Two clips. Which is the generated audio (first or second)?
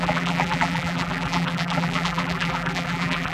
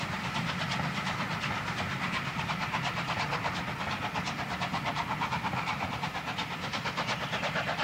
first